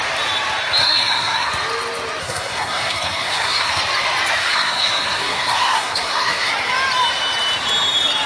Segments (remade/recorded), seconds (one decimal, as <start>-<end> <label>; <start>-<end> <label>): 0.0-0.8 recorded; 0.8-1.5 remade; 1.5-2.2 recorded; 2.2-3.8 remade; 3.8-4.4 recorded; 4.4-6.5 remade; 6.5-8.3 recorded